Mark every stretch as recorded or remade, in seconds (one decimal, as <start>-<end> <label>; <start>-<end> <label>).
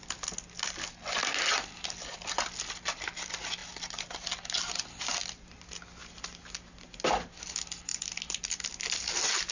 0.0-9.5 recorded